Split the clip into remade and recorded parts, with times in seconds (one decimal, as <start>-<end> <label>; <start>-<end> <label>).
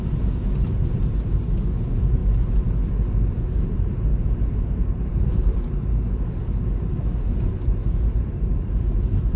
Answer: 0.0-1.0 remade; 1.0-1.7 recorded; 1.7-2.2 remade; 2.2-3.3 recorded; 3.3-9.4 remade